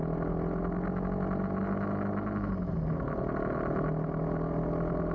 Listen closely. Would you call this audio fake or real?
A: real